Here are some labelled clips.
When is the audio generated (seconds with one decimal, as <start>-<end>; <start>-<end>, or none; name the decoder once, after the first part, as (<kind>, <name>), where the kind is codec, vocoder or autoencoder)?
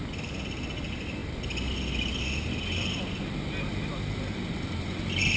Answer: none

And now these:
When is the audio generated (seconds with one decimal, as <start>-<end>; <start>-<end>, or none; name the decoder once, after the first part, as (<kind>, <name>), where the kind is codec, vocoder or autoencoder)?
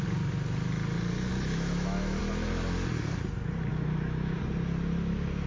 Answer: 1.3-2.2 (autoencoder, DAC-VAE); 3.7-4.4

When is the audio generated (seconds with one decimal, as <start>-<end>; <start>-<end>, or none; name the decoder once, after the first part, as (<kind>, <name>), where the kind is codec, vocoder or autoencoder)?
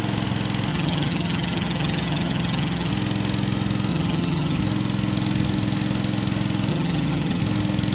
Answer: 0.7-2.9 (vocoder, HiFi-GAN); 3.9-4.6; 6.7-7.4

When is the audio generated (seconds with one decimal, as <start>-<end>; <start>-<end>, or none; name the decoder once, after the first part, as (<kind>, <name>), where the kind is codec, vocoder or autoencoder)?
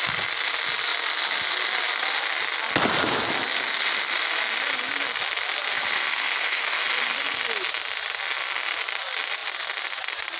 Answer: 6.1-6.8 (codec, SNAC)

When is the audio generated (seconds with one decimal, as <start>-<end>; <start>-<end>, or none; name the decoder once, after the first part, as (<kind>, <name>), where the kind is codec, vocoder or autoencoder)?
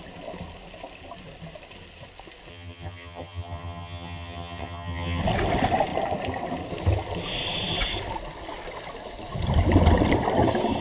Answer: 2.5-5.2 (vocoder, HiFi-GAN)